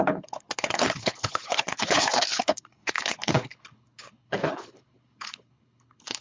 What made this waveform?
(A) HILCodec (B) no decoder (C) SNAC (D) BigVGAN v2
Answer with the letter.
A